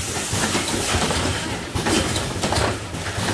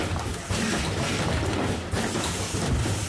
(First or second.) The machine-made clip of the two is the first